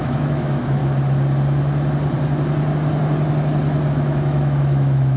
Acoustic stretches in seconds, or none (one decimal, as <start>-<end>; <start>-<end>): 0.8-3.9